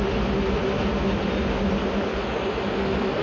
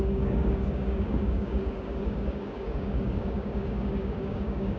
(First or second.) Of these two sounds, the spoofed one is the second